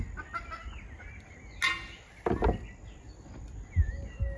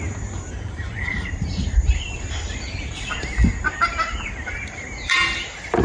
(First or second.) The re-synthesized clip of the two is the second